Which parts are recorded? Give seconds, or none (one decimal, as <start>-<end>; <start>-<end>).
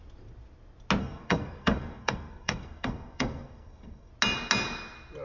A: 0.0-1.0; 4.1-5.2